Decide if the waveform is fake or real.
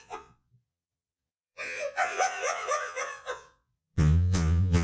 fake